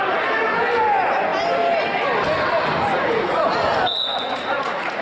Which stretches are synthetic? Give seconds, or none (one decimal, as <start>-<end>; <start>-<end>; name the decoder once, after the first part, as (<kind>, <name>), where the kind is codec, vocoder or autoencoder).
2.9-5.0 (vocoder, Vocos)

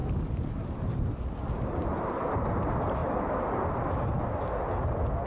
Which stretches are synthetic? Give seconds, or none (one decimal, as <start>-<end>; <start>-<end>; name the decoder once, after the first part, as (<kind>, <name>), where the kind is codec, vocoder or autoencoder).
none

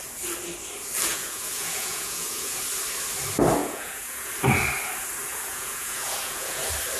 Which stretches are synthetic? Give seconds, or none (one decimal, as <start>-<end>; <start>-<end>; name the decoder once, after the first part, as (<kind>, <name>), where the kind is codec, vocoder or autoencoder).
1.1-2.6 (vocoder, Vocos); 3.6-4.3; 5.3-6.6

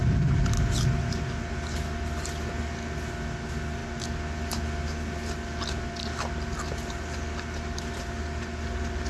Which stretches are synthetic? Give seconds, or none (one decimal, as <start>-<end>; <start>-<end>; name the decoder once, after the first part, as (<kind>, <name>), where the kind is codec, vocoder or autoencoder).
none

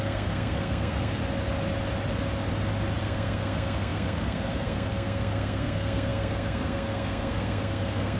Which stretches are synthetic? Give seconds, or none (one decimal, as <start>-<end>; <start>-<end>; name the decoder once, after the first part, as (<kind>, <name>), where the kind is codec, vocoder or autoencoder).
0.0-1.2 (codec, SNAC); 3.0-8.2

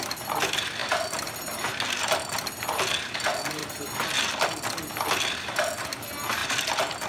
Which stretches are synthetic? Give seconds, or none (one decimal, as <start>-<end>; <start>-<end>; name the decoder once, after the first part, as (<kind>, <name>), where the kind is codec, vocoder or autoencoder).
6.4-7.1 (vocoder, BigVGAN v2)

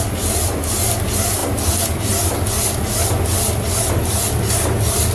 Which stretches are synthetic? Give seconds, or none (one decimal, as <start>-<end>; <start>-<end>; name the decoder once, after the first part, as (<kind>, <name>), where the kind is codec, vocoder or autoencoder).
none